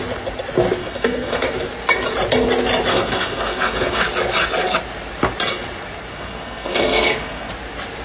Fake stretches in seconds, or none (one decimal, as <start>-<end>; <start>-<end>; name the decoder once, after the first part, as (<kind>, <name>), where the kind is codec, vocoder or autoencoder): 0.8-1.5 (codec, SNAC); 2.9-4.0; 6.1-7.5